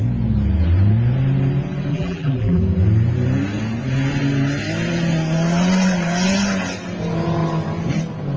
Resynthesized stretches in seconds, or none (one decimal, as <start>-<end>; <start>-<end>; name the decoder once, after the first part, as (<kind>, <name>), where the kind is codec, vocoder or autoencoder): 1.9-2.6 (vocoder, BigVGAN v2)